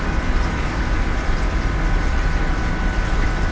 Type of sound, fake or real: real